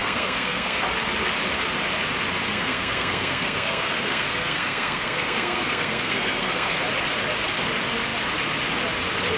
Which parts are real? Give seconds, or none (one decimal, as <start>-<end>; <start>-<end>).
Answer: 0.8-2.5; 6.8-9.4